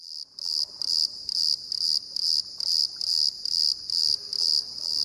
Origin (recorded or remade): remade